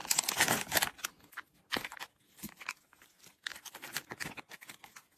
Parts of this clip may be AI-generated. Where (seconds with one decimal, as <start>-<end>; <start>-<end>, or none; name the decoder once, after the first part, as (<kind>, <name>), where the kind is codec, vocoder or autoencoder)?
none